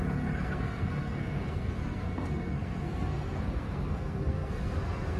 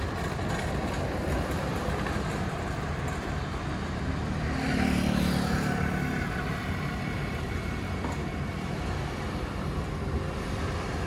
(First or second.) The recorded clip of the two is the second